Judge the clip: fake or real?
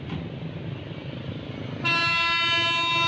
real